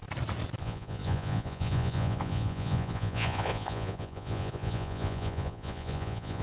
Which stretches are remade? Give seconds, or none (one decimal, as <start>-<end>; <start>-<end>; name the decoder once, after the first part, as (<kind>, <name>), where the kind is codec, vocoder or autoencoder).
0.6-6.4 (vocoder, Vocos)